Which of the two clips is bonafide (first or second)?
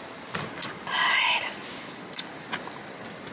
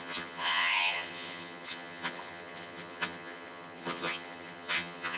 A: first